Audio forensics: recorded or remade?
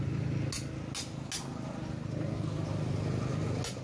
recorded